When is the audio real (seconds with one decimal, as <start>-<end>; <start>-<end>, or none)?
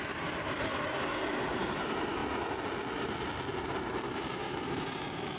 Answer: 0.7-1.4; 2.2-3.6